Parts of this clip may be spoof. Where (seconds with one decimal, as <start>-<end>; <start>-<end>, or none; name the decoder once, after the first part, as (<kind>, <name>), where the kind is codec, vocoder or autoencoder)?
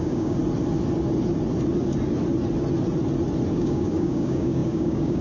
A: 0.0-0.4 (codec, DAC); 3.5-5.2